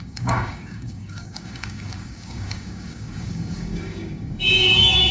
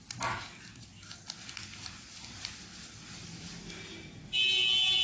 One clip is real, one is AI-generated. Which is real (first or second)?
second